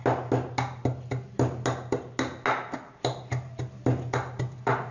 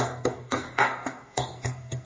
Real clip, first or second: first